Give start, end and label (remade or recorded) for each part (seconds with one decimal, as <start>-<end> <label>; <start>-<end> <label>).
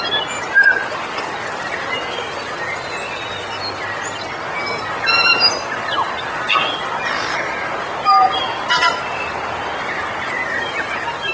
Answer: 0.0-11.3 recorded